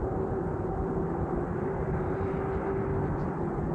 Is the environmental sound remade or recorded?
recorded